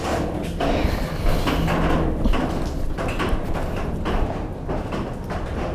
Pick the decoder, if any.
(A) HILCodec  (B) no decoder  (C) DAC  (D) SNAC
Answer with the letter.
B